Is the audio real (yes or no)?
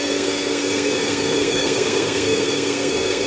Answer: no